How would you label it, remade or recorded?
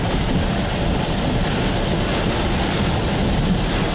recorded